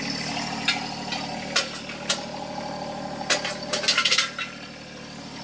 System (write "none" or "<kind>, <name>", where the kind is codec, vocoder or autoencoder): none